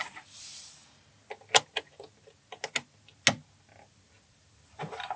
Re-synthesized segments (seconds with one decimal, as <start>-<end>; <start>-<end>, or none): 0.0-0.8; 3.9-5.2